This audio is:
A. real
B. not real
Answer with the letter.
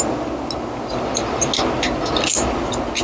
A